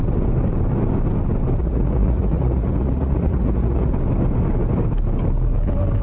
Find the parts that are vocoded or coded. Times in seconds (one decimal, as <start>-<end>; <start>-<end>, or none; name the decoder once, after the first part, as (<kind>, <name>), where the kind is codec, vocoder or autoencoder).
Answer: 1.6-3.9 (vocoder, Vocos)